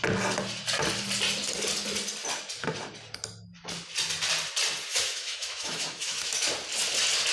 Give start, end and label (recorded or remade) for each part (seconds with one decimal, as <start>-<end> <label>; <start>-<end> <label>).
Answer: 0.0-4.9 recorded; 4.9-6.5 remade; 6.5-7.3 recorded